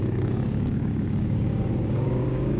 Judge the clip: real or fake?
fake